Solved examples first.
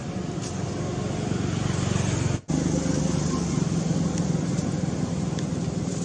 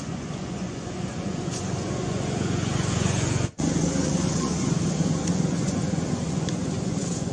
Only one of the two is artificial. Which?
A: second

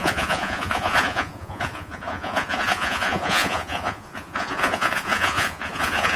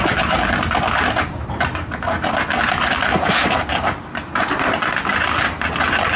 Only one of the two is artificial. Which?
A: first